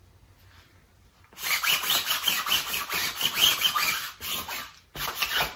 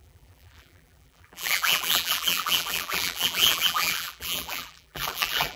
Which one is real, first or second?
first